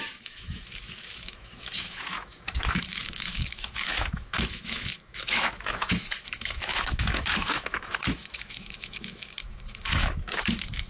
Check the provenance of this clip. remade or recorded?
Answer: remade